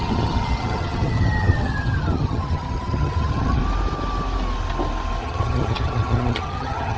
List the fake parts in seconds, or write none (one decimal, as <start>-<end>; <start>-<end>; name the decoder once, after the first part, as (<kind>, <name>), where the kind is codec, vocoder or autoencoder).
0.0-3.6 (vocoder, HiFi-GAN); 5.2-7.0